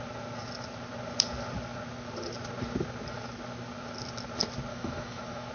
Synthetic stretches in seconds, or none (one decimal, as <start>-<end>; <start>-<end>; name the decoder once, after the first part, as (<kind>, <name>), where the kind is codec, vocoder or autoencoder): 4.7-5.5 (autoencoder, DAC-VAE)